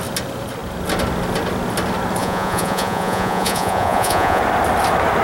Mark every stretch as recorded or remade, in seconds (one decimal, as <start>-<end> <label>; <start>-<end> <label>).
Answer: 0.0-2.2 recorded; 2.2-4.4 remade; 4.4-5.2 recorded